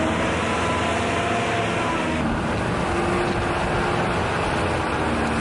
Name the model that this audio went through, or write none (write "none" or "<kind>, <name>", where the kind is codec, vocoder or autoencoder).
none